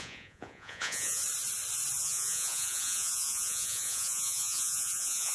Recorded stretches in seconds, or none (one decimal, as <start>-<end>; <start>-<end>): 1.2-2.0